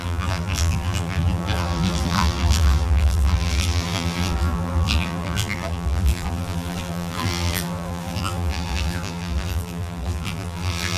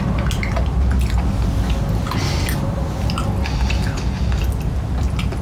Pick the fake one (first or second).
first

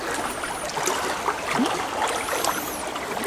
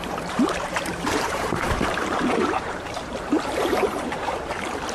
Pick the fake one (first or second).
second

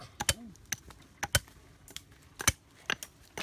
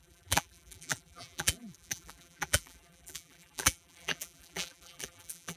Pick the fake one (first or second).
second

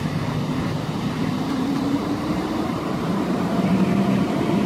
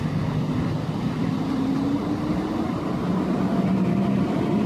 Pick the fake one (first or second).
first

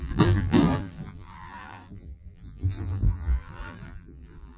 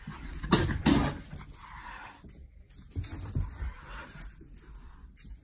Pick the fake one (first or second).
first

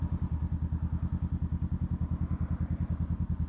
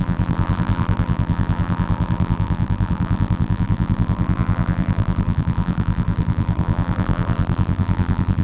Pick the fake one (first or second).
second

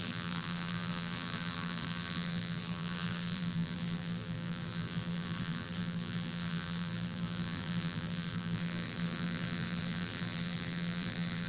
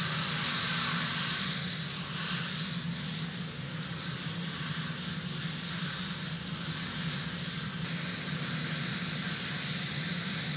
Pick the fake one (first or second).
first